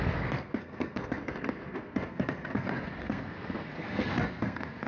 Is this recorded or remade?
remade